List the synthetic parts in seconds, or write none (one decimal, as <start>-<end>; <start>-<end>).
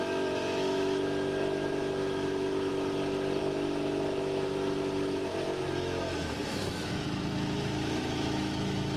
0.0-2.7; 3.4-9.0